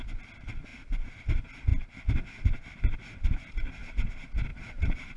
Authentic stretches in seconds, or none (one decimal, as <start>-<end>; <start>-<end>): 0.0-4.5